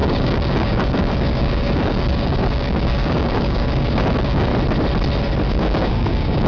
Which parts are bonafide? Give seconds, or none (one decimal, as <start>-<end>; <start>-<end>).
4.5-5.5